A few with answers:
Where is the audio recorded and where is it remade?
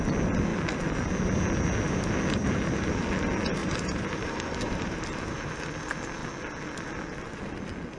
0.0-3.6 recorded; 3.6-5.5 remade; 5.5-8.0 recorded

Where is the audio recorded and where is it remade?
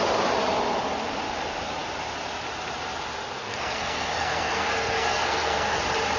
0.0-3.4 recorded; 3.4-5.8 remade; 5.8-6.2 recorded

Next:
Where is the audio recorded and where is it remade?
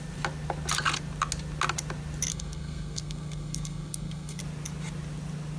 0.0-2.3 recorded; 2.3-4.4 remade; 4.4-5.6 recorded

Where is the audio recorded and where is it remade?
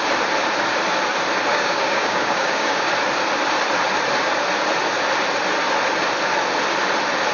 0.0-1.5 recorded; 1.5-2.9 remade; 2.9-7.3 recorded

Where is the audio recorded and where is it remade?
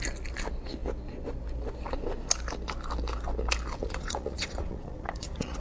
0.0-3.8 recorded; 3.8-5.6 remade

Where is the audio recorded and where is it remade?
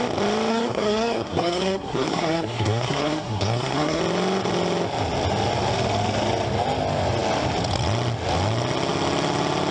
0.0-0.5 recorded; 0.5-4.0 remade; 4.0-9.7 recorded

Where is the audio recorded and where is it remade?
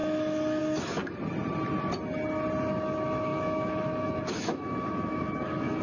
0.0-1.0 remade; 1.0-2.7 recorded; 2.7-5.8 remade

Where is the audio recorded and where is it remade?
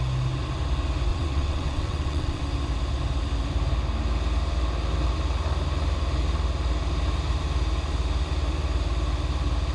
0.0-1.1 recorded; 1.1-2.4 remade; 2.4-9.7 recorded